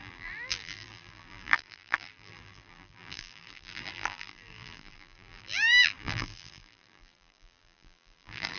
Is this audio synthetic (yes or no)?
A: yes